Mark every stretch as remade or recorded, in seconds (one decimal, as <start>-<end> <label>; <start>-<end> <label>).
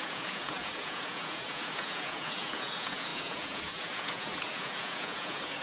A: 0.0-5.6 remade